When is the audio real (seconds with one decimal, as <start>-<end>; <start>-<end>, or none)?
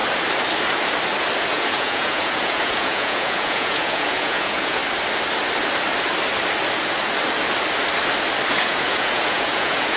0.0-1.5; 4.8-8.5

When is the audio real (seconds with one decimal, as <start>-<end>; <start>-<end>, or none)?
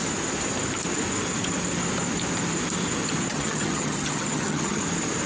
0.0-3.3; 4.8-5.3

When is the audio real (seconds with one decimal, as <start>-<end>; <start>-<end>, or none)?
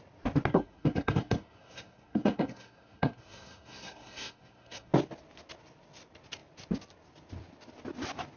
0.0-0.5; 4.9-8.4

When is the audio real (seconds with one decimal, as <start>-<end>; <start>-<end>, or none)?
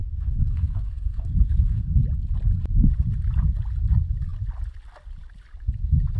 2.0-6.2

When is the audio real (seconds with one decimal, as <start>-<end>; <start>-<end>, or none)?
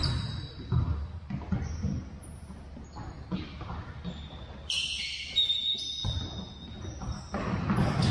0.0-8.1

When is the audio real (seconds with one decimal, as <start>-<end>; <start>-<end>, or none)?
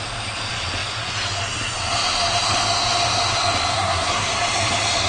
0.0-3.7; 4.3-5.1